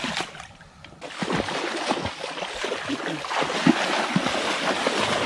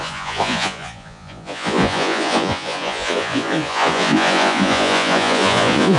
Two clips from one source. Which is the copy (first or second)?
second